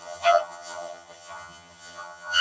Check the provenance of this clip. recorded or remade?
remade